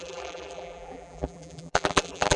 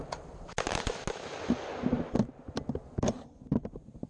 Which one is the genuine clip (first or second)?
second